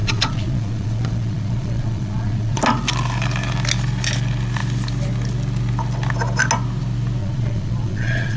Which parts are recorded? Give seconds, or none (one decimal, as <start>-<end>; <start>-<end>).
2.6-7.2